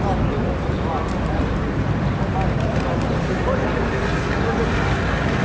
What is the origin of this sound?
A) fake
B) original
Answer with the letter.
B